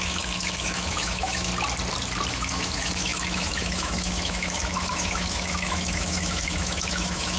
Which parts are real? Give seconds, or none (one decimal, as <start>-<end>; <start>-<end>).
1.5-2.3